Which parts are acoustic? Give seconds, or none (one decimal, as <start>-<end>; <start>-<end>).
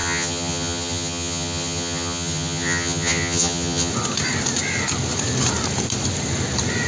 3.9-6.9